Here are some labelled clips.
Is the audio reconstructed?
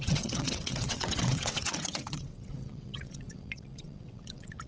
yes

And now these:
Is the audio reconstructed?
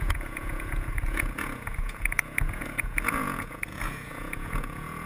yes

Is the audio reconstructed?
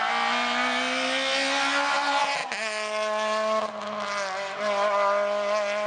no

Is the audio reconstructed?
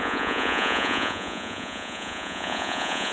yes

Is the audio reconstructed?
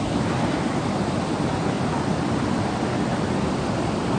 no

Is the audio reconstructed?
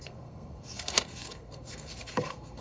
yes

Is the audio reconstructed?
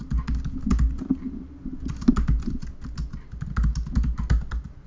no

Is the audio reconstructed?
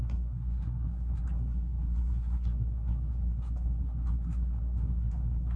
yes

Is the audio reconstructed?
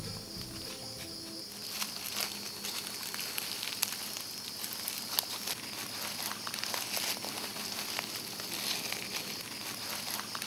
no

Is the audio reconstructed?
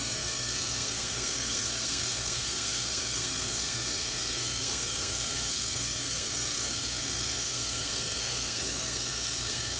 yes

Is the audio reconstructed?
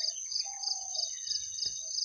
no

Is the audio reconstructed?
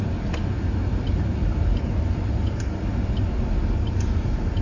no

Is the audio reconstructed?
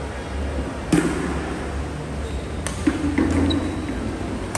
no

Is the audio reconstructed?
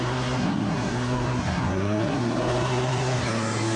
yes